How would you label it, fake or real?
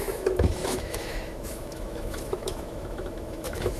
fake